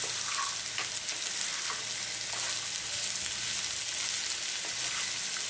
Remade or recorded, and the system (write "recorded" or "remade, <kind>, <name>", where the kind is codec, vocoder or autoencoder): recorded